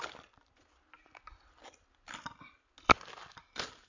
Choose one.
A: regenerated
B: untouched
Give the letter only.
B